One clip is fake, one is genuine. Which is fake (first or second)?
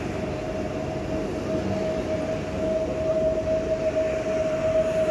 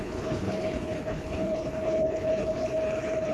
second